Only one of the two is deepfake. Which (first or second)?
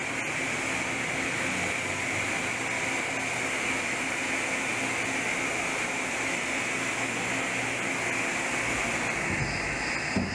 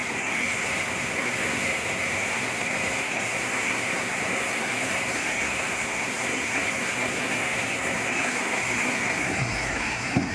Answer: second